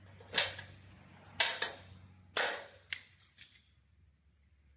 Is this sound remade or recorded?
recorded